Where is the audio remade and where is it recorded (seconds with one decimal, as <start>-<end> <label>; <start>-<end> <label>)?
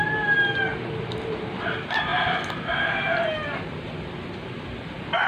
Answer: 0.0-0.7 recorded; 0.7-1.6 remade; 1.6-5.3 recorded